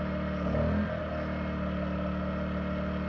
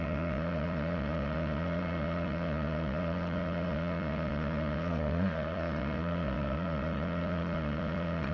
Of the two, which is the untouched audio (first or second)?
first